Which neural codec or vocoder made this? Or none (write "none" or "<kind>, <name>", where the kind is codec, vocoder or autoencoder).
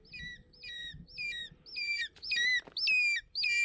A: none